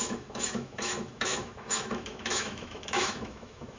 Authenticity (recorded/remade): remade